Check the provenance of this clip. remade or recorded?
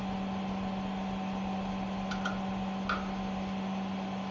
recorded